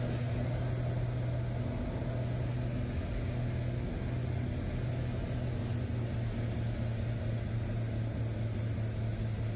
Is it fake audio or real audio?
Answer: real